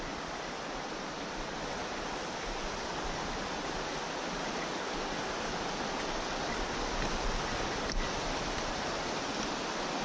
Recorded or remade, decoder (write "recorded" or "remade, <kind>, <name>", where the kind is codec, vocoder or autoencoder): recorded